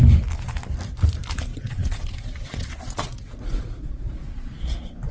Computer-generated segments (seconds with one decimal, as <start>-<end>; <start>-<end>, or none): 1.5-4.6